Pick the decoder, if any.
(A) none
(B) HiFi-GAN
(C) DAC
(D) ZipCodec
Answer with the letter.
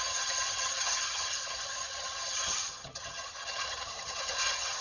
B